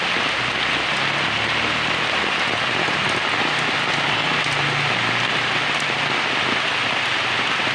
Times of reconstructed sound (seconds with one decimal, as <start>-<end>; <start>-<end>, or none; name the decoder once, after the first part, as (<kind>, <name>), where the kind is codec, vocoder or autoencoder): none